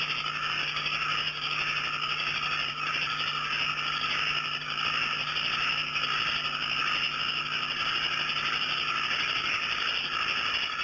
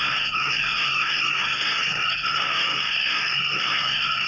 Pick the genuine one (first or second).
first